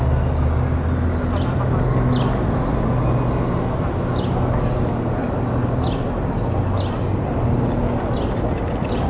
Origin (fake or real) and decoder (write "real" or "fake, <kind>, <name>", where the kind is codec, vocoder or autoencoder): real